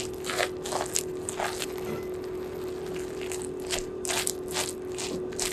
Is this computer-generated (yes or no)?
no